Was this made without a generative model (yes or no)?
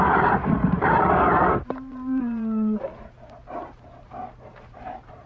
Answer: no